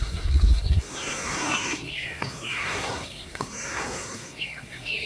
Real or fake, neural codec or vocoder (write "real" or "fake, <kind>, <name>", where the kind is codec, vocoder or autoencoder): fake, codec, SNAC